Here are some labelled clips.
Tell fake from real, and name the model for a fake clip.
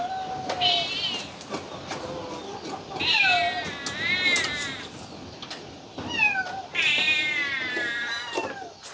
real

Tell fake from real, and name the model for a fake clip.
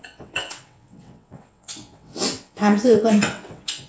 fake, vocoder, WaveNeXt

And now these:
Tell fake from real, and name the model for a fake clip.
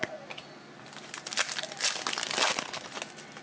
real